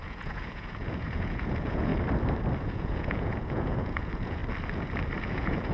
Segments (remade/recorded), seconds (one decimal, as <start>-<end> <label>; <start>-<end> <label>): 0.0-1.9 remade; 1.9-2.6 recorded; 2.6-4.4 remade; 4.4-5.2 recorded; 5.2-5.7 remade